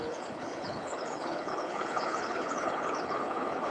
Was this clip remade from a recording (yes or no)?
yes